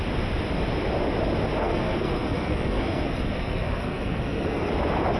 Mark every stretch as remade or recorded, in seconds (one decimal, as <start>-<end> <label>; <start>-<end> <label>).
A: 0.0-1.6 recorded; 1.6-4.7 remade; 4.7-5.2 recorded

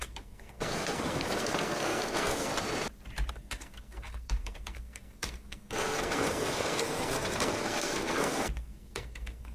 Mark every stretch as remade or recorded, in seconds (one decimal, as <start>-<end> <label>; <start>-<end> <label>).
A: 0.0-2.5 remade; 2.5-3.3 recorded; 3.3-9.5 remade

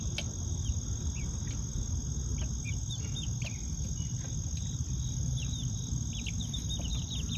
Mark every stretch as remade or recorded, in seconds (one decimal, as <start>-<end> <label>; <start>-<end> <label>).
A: 0.0-7.4 recorded

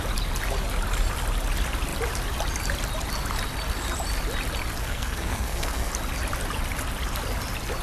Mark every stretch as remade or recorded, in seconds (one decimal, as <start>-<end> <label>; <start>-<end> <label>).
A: 0.0-4.8 recorded; 4.8-5.9 remade; 5.9-7.8 recorded

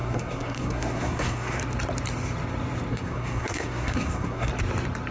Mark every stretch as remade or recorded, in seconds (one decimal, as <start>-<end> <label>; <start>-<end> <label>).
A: 0.0-1.6 remade; 1.6-2.9 recorded; 2.9-4.5 remade; 4.5-5.1 recorded

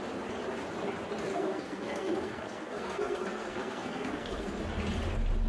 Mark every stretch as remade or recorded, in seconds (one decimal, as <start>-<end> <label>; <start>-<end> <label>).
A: 0.0-1.3 recorded; 1.3-4.6 remade; 4.6-5.5 recorded

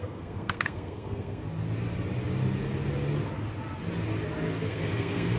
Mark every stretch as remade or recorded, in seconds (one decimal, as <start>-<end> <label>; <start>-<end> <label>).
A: 0.0-1.4 remade; 1.4-4.6 recorded; 4.6-5.4 remade